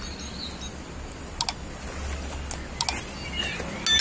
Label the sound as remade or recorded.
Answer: recorded